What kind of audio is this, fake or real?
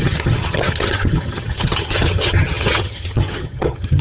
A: fake